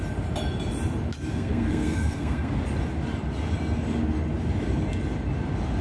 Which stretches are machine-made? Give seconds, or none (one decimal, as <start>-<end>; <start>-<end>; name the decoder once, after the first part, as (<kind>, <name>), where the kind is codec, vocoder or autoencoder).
1.3-2.5 (codec, SNAC)